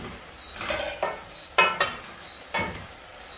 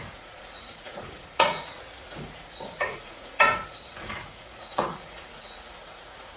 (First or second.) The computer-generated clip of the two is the second